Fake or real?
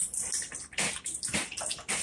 real